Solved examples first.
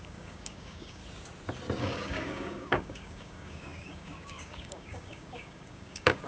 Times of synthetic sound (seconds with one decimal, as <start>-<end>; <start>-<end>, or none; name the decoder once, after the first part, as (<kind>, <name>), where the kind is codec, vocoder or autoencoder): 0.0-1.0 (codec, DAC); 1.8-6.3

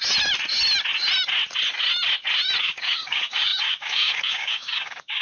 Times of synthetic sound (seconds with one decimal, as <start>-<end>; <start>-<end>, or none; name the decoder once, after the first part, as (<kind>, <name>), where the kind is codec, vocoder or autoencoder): 2.6-5.2 (codec, DAC)

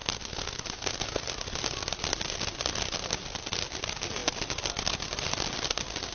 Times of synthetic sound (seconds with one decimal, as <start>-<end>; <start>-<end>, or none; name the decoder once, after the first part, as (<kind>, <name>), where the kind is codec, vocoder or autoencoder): none

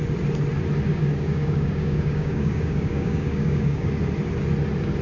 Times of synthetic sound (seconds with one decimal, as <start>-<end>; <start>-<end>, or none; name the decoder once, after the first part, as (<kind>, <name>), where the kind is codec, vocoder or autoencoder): 0.9-3.9 (codec, DAC)

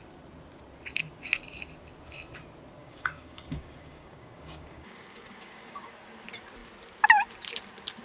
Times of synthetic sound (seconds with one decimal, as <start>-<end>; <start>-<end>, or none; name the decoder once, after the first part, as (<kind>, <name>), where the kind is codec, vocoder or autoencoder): 2.8-5.9 (codec, DAC)